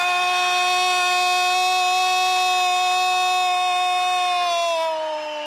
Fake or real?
real